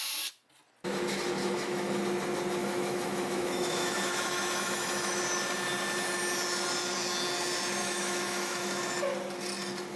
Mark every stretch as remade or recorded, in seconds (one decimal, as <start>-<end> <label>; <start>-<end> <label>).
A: 0.0-1.4 recorded; 1.4-2.0 remade; 2.0-2.6 recorded; 2.6-5.2 remade; 5.2-7.8 recorded; 7.8-8.8 remade; 8.8-10.0 recorded